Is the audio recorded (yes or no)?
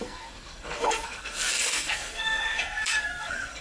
no